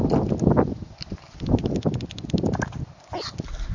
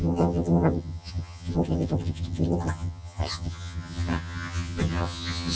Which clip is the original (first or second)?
first